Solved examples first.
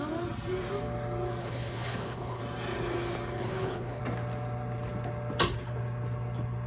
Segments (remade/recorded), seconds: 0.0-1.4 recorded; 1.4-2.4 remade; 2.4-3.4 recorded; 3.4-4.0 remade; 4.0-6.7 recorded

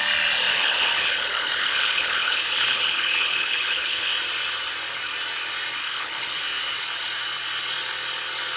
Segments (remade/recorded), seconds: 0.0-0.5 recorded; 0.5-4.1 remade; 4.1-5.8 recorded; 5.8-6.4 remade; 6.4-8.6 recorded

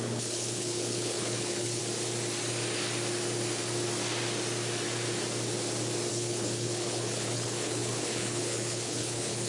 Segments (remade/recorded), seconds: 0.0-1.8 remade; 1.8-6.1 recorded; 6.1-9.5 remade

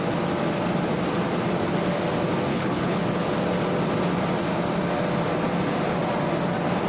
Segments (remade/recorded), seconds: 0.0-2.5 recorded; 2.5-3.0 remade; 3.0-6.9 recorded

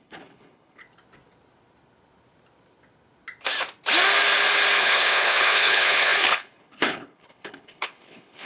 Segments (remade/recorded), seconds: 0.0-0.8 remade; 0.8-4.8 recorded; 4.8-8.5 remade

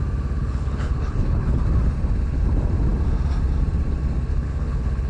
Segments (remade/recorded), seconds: 0.0-0.4 recorded; 0.4-1.6 remade; 1.6-4.3 recorded; 4.3-5.1 remade

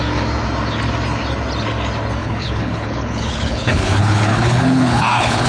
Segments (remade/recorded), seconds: 0.0-2.2 recorded; 2.2-5.5 remade